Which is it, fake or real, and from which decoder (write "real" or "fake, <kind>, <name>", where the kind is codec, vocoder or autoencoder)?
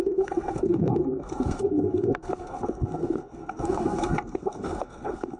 fake, codec, SNAC